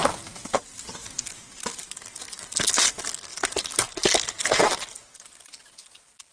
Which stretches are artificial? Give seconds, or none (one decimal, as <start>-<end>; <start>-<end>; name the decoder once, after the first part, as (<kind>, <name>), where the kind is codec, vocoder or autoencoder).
none